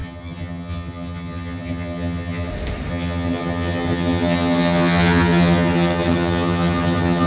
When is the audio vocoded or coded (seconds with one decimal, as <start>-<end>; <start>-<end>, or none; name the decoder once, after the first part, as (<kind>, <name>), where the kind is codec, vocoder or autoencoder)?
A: 0.0-2.5 (vocoder, HiFi-GAN); 2.9-7.3

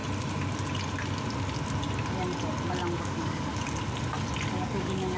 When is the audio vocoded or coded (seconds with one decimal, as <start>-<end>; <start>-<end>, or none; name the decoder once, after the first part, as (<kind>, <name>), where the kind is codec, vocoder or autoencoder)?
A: 3.0-3.5 (codec, DAC); 4.5-5.2

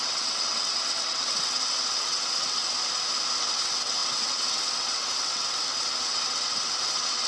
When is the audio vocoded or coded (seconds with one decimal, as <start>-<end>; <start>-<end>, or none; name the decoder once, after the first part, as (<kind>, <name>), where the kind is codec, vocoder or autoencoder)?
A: 0.0-2.6 (vocoder, WaveNeXt); 3.4-7.3

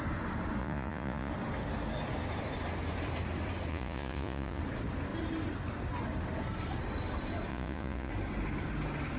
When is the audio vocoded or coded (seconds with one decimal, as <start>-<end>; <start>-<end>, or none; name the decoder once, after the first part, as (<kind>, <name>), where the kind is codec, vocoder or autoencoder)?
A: 0.6-1.3 (vocoder, Vocos); 3.7-4.6; 7.5-8.1

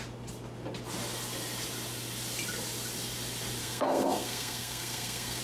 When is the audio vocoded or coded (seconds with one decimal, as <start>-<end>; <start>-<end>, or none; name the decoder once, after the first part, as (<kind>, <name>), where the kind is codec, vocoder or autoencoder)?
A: 3.6-5.4 (codec, SNAC)

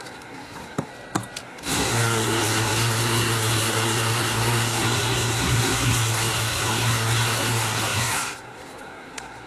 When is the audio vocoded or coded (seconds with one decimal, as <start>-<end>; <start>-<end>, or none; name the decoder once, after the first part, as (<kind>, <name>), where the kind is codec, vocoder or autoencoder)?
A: 0.0-0.9 (codec, SNAC); 1.4-9.5

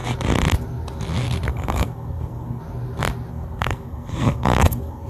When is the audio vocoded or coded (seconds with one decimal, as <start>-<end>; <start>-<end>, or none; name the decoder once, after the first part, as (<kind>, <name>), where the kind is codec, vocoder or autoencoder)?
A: 1.5-2.6 (codec, SNAC); 3.3-5.1